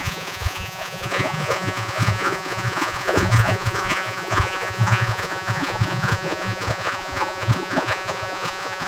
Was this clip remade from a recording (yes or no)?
yes